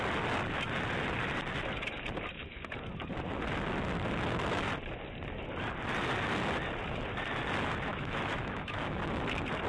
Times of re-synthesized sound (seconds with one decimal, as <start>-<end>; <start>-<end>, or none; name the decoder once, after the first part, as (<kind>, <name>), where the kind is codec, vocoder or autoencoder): 7.9-9.0 (autoencoder, DAC-VAE)

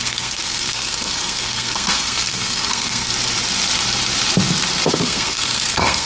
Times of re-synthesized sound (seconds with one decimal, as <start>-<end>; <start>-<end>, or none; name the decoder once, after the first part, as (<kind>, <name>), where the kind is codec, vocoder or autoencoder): 0.0-3.1 (codec, SNAC); 4.9-6.1

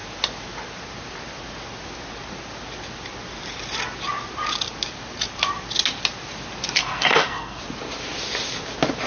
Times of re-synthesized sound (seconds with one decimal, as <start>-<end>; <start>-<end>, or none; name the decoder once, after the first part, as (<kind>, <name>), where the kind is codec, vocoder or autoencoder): 6.8-7.6 (codec, SNAC)

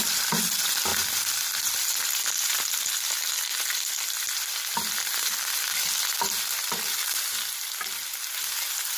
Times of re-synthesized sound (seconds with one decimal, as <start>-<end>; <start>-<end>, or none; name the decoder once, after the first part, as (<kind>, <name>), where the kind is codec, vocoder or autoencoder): none

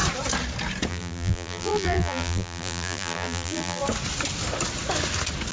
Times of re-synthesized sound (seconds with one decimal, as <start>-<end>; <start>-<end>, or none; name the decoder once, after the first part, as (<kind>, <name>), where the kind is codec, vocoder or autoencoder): 0.9-3.8 (vocoder, BigVGAN v2)